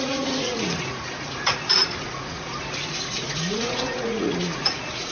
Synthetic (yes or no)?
yes